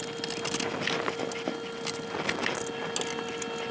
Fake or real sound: real